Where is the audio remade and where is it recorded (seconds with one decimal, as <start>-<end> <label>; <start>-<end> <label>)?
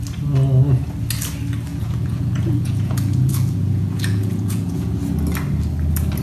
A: 0.0-1.7 recorded; 1.7-5.0 remade; 5.0-6.2 recorded